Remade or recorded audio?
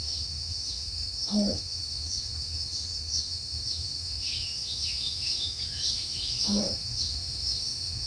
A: remade